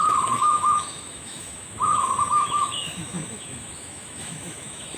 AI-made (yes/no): yes